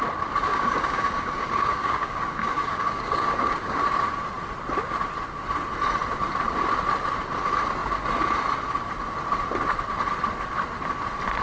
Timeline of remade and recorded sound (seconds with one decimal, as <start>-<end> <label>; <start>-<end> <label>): 0.0-0.5 recorded; 0.5-3.8 remade; 3.8-11.4 recorded